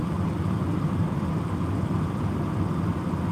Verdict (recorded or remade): recorded